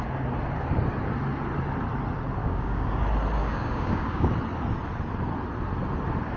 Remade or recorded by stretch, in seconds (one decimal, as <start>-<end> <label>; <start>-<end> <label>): 0.0-2.4 recorded; 2.4-3.0 remade; 3.0-3.4 recorded; 3.4-4.3 remade; 4.3-6.4 recorded